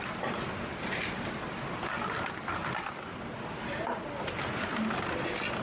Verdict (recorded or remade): recorded